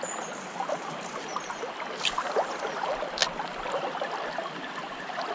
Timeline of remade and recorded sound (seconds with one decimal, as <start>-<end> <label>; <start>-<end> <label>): 0.0-5.3 recorded